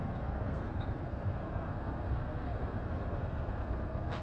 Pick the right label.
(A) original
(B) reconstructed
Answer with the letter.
B